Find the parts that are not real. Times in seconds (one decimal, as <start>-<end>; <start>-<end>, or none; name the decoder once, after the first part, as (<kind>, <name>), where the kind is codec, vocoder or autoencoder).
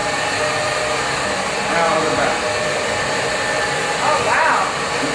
none